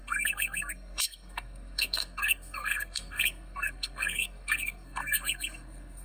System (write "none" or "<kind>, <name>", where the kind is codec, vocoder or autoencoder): codec, SNAC